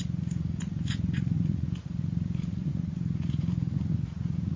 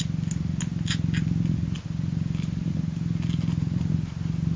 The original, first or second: second